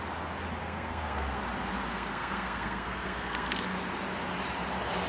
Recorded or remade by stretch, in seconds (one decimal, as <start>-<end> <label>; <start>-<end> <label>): 0.0-0.6 recorded; 0.6-1.4 remade; 1.4-1.9 recorded; 1.9-3.6 remade; 3.6-5.1 recorded